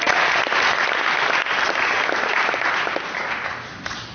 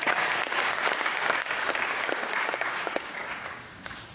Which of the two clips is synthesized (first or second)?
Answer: second